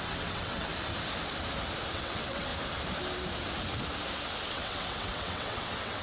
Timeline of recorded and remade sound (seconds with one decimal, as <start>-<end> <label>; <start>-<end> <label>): 0.0-0.7 remade; 0.7-1.9 recorded; 1.9-2.5 remade; 2.5-4.5 recorded; 4.5-6.0 remade